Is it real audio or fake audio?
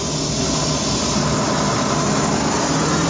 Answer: real